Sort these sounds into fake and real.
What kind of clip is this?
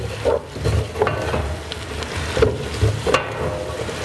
real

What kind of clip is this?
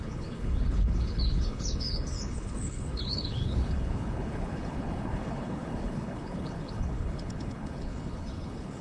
fake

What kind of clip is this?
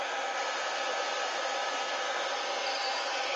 real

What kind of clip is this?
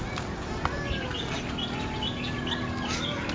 real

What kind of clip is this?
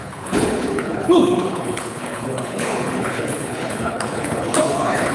fake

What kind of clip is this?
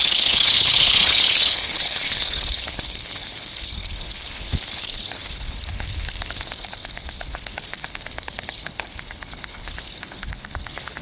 fake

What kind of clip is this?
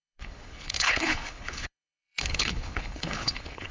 fake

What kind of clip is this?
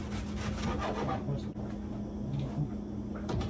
real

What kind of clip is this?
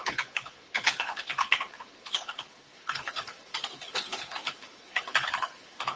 fake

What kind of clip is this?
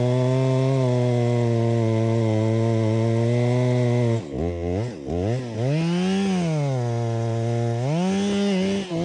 real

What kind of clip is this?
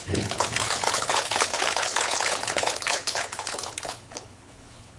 fake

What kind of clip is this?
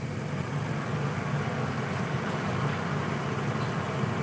real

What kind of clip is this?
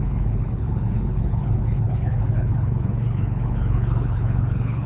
fake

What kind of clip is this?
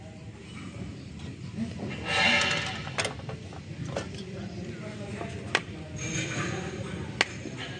real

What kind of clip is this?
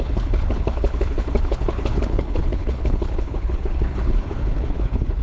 fake